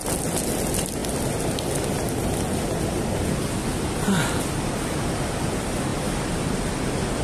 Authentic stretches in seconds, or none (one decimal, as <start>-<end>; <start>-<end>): 0.0-7.2